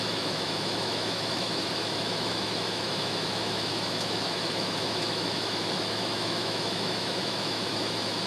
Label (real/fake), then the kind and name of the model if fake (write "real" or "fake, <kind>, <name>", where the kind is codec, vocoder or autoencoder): fake, autoencoder, DAC-VAE